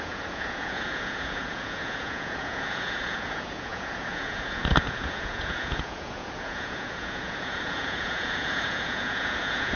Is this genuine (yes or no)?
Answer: no